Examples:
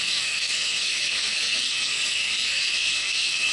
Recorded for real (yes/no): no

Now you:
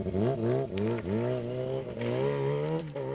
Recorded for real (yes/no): yes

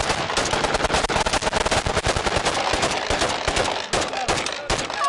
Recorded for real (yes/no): yes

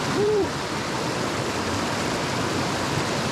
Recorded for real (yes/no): no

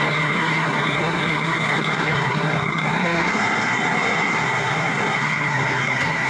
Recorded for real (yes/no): no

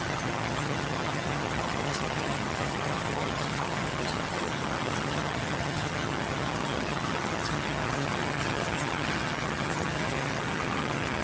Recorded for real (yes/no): no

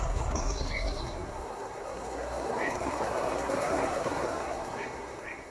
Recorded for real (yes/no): no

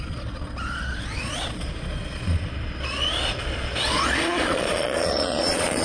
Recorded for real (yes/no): no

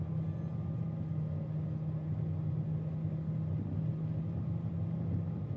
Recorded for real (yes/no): yes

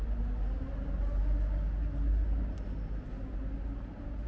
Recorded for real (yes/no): yes